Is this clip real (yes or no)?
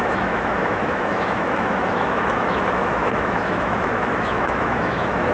no